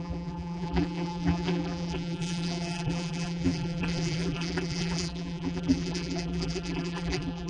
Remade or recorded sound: remade